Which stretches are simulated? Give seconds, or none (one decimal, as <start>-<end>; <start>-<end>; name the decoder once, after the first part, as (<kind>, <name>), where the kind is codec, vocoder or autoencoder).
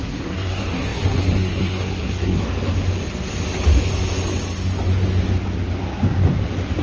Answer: 0.0-2.4 (codec, SNAC)